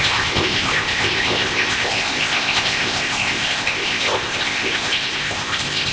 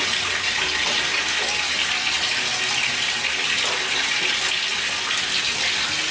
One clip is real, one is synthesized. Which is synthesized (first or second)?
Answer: first